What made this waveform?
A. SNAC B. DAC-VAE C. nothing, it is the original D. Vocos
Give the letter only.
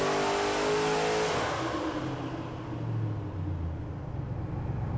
C